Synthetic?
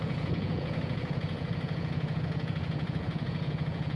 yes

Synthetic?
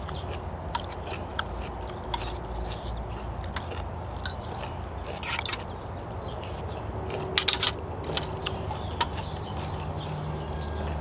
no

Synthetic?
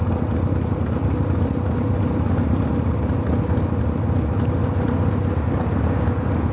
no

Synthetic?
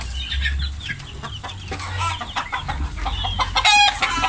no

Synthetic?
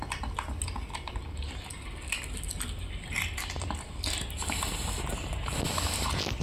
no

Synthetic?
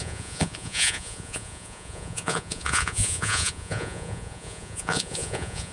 yes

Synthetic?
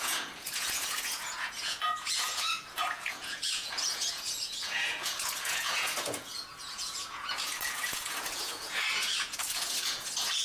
yes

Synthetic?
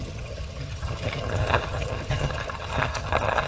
yes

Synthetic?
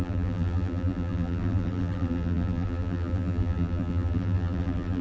yes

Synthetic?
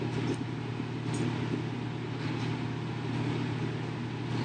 no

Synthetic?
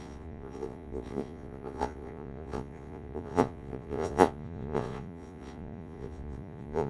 yes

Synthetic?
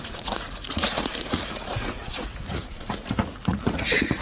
yes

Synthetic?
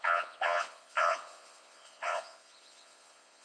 yes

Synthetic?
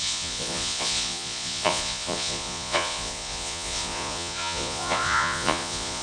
yes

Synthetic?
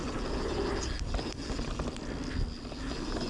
no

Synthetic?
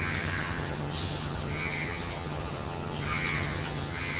yes